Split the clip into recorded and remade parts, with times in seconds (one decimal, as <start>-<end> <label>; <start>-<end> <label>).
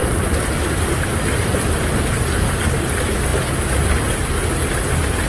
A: 0.0-1.9 remade; 1.9-5.3 recorded